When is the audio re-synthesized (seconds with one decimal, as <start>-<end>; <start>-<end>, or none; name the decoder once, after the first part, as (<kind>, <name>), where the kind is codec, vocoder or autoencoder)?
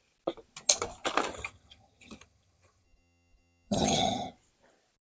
1.3-4.3 (vocoder, HiFi-GAN)